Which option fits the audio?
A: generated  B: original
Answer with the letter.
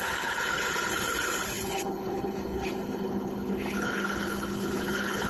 A